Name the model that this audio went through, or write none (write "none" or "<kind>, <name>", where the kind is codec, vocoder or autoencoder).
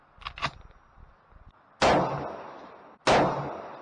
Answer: none